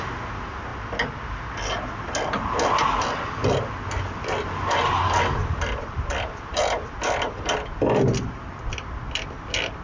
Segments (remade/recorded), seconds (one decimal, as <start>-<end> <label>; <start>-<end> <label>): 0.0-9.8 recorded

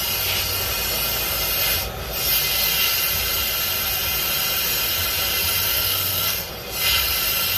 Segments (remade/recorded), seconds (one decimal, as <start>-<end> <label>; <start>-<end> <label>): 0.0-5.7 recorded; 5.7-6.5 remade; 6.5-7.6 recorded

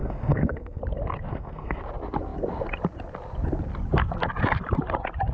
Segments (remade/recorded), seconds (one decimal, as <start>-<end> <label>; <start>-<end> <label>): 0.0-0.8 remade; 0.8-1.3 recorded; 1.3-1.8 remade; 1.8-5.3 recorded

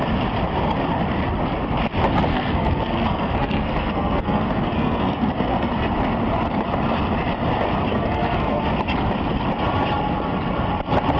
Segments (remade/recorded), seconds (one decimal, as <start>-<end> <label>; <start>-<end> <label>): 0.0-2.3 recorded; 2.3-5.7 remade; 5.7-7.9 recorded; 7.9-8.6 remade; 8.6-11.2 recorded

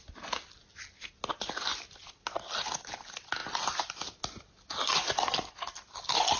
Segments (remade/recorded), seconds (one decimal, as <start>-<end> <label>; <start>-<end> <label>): 0.0-6.4 recorded